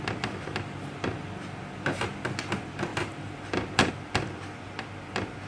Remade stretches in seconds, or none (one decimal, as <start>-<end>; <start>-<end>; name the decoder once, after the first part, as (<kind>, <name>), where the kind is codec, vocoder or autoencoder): 2.9-3.9 (vocoder, BigVGAN v2)